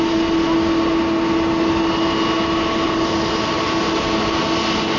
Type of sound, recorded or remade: recorded